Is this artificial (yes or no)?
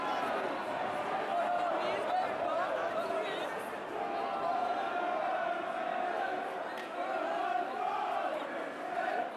no